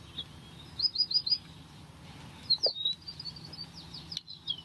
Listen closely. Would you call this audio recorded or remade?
recorded